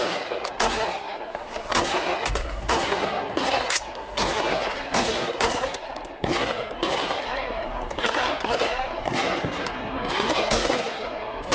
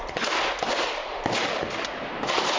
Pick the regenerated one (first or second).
first